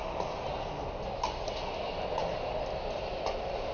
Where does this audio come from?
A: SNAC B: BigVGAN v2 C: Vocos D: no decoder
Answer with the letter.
D